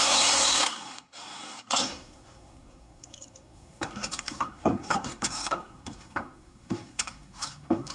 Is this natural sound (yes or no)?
no